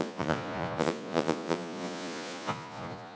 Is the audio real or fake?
fake